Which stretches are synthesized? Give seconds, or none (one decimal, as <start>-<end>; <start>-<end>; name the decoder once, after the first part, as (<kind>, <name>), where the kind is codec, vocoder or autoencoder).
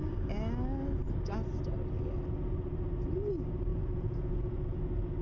3.7-4.8 (vocoder, Vocos)